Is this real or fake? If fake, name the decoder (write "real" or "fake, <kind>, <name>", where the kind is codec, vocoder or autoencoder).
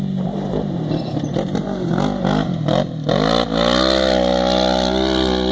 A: real